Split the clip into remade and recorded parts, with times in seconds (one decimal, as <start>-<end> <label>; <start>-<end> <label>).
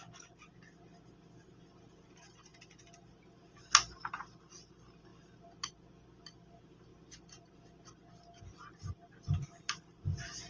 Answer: 0.0-10.5 recorded